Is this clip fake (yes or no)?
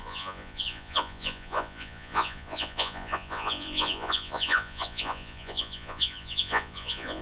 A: yes